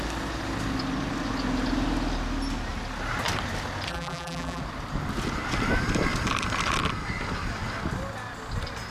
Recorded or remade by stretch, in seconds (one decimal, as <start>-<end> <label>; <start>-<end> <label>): 0.0-3.9 recorded; 3.9-4.6 remade; 4.6-8.9 recorded